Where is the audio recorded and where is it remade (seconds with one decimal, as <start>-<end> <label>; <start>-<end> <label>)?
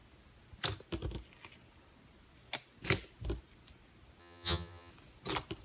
0.0-4.2 recorded; 4.2-4.9 remade; 4.9-5.6 recorded